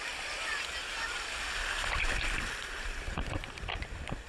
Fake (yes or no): no